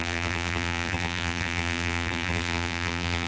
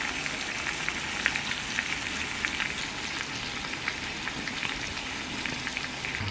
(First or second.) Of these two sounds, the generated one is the first